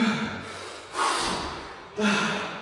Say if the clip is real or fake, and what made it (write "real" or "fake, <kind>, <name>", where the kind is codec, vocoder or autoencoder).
fake, vocoder, Vocos